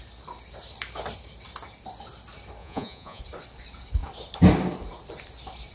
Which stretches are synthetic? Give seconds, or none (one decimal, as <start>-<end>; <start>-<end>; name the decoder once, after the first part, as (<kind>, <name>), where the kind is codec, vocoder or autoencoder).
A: 2.6-3.2 (vocoder, Vocos)